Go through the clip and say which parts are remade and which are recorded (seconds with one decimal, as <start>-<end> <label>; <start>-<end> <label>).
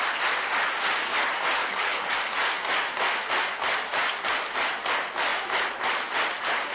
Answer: 0.0-1.6 recorded; 1.6-2.1 remade; 2.1-6.7 recorded